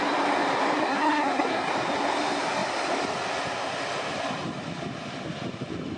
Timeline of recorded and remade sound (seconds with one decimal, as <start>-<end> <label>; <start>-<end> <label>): 0.0-0.8 recorded; 0.8-1.7 remade; 1.7-6.0 recorded